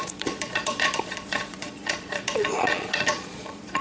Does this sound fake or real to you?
fake